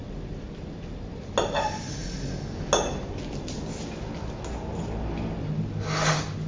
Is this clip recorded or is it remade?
recorded